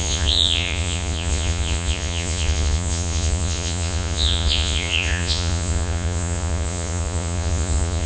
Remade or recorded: remade